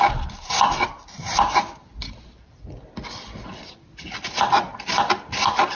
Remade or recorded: recorded